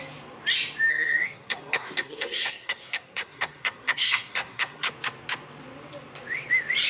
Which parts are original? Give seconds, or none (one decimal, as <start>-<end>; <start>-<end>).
0.0-0.9; 4.9-6.9